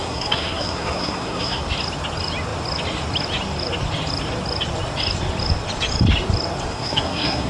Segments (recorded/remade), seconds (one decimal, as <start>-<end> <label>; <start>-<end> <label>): 0.0-1.6 remade; 1.6-6.7 recorded; 6.7-7.5 remade